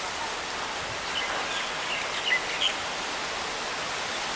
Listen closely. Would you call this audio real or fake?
real